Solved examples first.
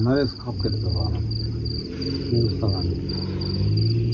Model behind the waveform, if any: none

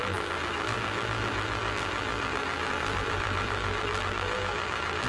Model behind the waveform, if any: vocoder, BigVGAN v2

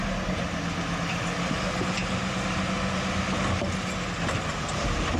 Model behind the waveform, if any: none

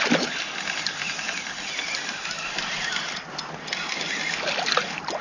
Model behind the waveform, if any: none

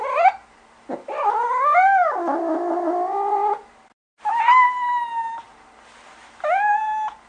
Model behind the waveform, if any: none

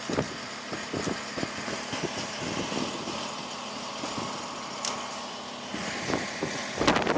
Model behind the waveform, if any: none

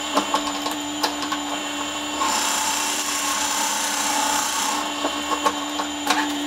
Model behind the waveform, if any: vocoder, BigVGAN v2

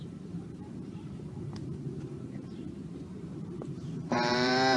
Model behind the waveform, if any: vocoder, BigVGAN v2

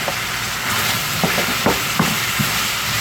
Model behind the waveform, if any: vocoder, BigVGAN v2